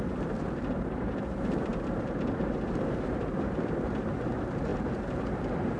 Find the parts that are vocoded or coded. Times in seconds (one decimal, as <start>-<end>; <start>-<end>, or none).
0.0-4.7; 5.2-5.8